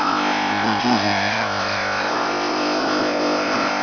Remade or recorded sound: remade